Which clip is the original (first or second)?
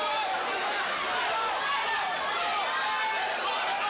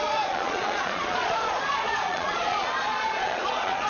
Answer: first